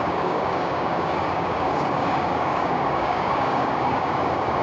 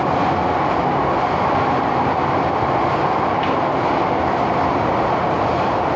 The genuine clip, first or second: second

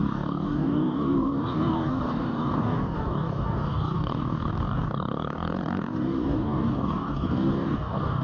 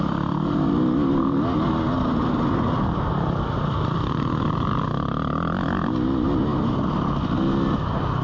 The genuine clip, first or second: second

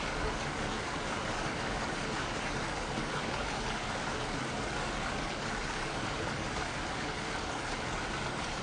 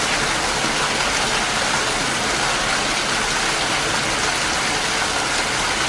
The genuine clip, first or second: second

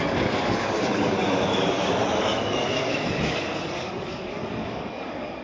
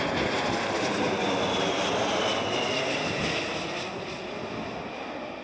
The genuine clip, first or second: second